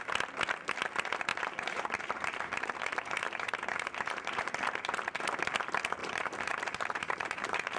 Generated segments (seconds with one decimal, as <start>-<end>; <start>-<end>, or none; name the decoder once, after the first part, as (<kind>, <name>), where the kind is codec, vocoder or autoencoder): 1.3-4.5 (vocoder, BigVGAN v2); 6.0-7.8